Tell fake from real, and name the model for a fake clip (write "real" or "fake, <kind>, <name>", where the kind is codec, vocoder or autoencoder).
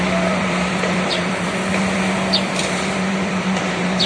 fake, vocoder, BigVGAN v2